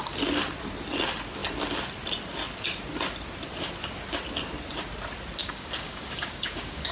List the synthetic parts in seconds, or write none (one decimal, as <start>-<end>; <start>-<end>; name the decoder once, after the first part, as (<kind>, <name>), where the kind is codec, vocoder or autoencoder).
5.4-6.9 (codec, DAC)